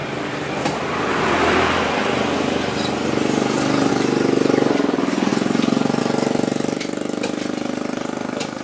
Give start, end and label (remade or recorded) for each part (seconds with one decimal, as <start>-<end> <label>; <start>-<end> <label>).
0.0-3.9 remade; 3.9-5.3 recorded; 5.3-6.0 remade; 6.0-8.6 recorded